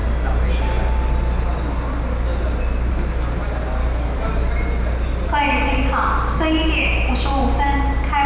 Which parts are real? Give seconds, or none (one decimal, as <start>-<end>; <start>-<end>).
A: 0.0-3.8; 4.5-8.3